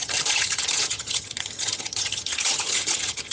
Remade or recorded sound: remade